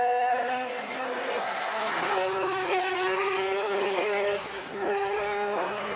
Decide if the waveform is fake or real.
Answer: fake